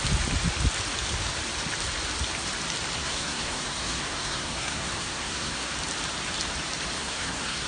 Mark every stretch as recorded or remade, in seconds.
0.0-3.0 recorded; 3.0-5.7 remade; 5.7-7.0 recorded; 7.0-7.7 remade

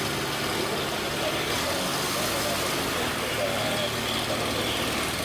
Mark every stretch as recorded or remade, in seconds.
0.0-5.2 recorded

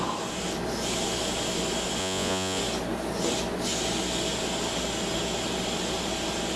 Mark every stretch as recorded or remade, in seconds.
0.0-2.0 recorded; 2.0-2.6 remade; 2.6-6.6 recorded

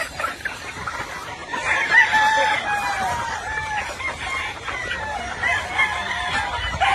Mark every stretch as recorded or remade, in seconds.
0.0-1.4 recorded; 1.4-5.2 remade; 5.2-6.9 recorded

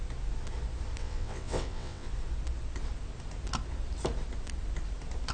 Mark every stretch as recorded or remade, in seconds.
0.0-1.0 recorded; 1.0-2.1 remade; 2.1-5.3 recorded

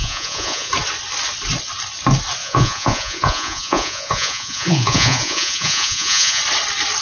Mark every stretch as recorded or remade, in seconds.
0.0-0.7 remade; 0.7-2.4 recorded; 2.4-6.4 remade; 6.4-7.0 recorded